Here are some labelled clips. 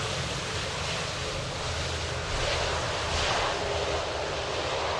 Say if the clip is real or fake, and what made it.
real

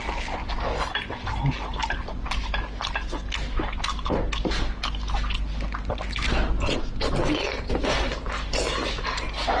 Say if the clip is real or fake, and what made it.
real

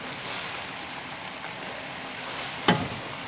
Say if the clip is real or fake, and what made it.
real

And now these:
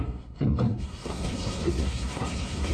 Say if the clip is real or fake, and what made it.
fake, codec, SNAC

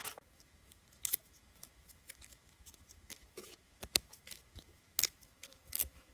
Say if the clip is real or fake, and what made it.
fake, autoencoder, DAC-VAE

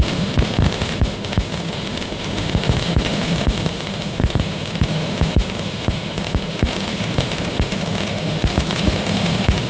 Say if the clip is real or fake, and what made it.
fake, autoencoder, DAC-VAE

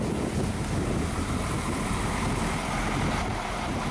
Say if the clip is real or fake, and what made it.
fake, vocoder, BigVGAN v2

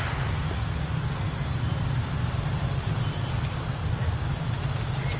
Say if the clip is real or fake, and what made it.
real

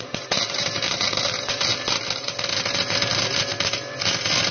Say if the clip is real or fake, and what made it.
real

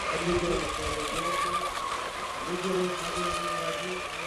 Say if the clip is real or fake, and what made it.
real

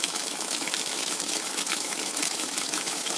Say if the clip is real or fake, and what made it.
fake, autoencoder, DAC-VAE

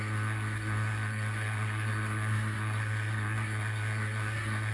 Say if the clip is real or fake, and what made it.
fake, codec, SNAC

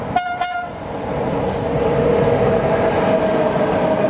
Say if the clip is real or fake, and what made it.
real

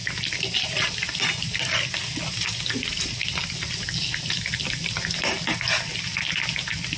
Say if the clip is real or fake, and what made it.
real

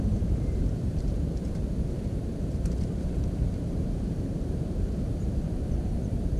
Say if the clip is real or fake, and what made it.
fake, vocoder, BigVGAN v2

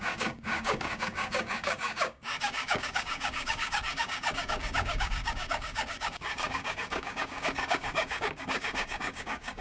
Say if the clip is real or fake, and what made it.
fake, codec, DAC